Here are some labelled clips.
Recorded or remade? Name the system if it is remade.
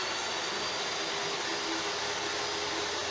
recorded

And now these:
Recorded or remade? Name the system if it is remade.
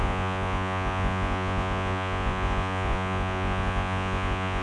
remade, vocoder, Vocos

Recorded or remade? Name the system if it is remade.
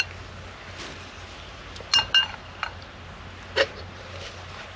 recorded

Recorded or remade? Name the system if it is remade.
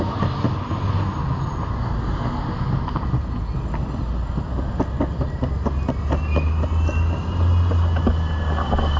recorded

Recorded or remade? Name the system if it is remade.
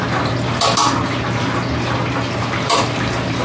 recorded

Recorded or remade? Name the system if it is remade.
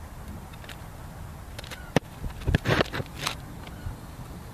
recorded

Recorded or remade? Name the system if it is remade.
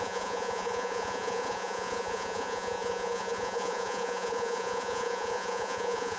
remade, vocoder, Vocos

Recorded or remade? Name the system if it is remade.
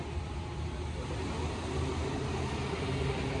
recorded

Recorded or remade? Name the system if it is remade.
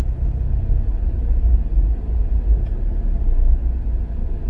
recorded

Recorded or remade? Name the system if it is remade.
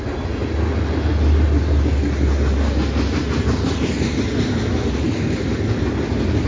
recorded